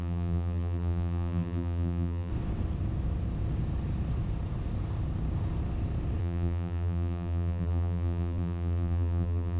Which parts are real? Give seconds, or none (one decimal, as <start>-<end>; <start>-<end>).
2.3-6.2